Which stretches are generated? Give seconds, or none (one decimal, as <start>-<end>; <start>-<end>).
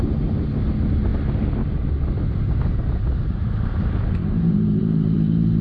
0.0-1.1; 3.3-5.6